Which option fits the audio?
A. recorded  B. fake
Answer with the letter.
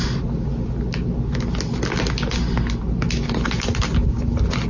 A